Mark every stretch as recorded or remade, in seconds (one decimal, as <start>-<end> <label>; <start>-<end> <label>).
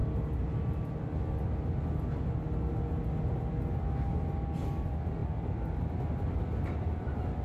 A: 0.0-7.4 recorded